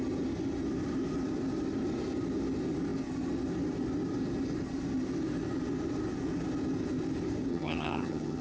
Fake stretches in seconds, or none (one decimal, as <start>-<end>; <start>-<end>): 7.5-8.4